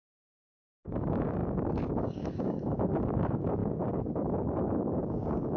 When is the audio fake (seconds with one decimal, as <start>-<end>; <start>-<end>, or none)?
0.0-5.6